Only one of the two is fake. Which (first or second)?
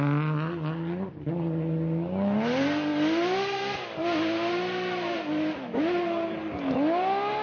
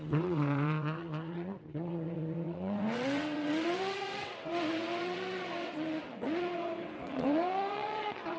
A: second